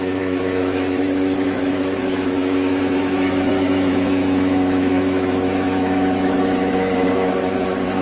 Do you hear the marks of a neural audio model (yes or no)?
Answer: yes